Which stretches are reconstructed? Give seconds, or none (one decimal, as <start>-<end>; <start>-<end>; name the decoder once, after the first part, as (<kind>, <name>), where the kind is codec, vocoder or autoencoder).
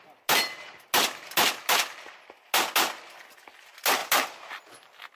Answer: none